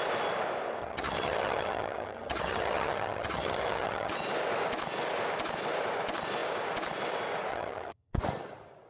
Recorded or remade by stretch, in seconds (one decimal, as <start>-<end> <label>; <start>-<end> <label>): 0.0-0.8 recorded; 0.8-4.1 remade; 4.1-7.5 recorded; 7.5-8.1 remade; 8.1-8.9 recorded